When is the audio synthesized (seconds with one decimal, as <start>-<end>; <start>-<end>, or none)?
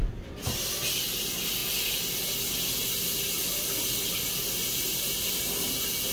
none